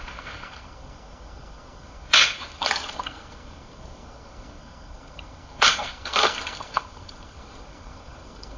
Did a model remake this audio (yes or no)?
yes